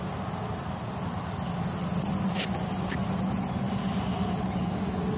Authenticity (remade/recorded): recorded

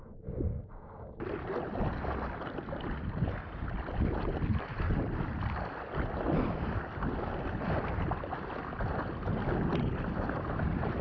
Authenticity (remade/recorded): recorded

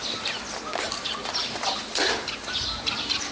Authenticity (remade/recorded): recorded